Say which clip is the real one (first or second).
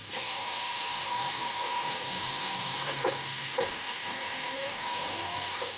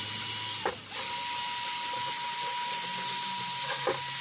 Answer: second